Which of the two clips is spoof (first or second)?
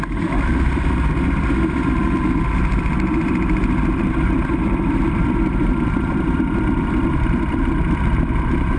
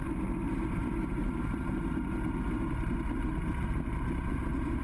first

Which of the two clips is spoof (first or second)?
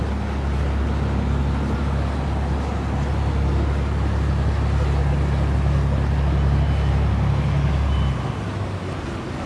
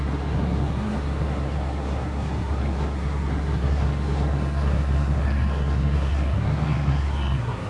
second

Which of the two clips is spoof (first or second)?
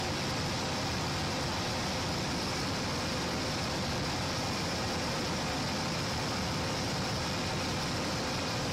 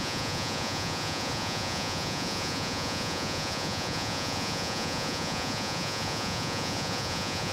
second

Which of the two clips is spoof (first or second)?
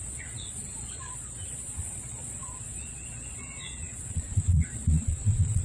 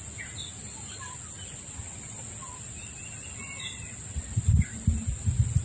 first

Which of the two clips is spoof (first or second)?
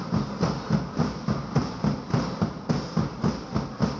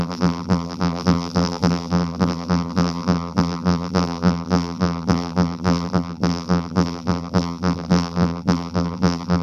second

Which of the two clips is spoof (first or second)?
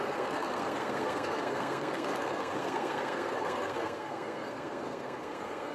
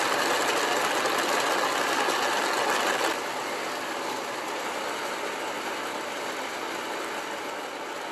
first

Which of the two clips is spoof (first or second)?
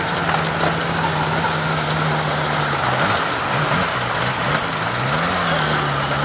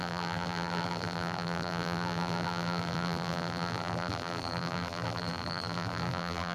second